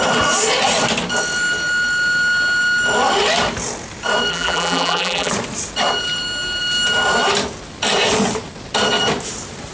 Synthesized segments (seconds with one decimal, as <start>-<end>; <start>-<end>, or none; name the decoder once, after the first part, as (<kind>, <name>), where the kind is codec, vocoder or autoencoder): 4.3-5.3 (vocoder, BigVGAN v2)

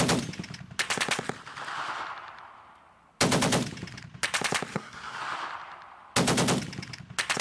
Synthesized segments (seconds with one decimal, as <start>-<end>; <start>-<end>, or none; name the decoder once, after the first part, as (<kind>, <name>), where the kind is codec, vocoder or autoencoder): 4.7-5.2 (codec, SNAC)

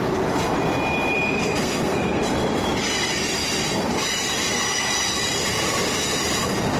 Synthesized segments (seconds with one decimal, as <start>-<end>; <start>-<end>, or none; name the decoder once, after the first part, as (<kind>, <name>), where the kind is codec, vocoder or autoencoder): 1.6-2.2 (codec, SNAC)

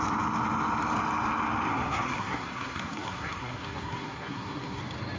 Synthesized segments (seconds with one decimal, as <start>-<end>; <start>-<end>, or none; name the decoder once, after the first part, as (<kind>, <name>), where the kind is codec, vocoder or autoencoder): 1.7-4.8 (codec, SNAC)